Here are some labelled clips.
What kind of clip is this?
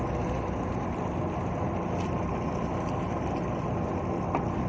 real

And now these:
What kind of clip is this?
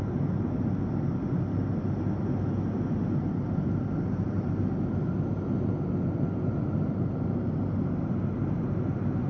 real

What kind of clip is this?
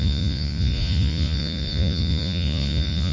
fake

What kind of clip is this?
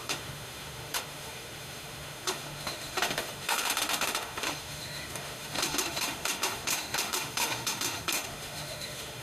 fake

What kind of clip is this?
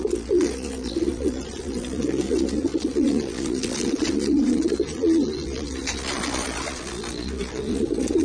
fake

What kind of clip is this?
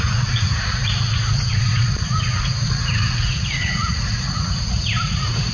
fake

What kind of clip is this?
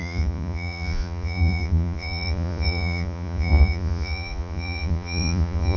fake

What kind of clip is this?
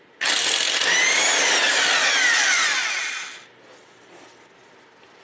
real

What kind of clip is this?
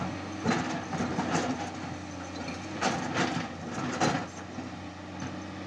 real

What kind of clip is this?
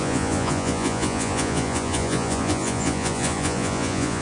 fake